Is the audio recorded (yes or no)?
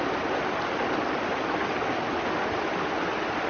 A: yes